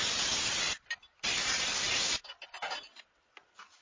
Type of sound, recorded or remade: recorded